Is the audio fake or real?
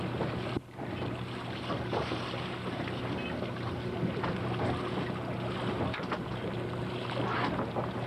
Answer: real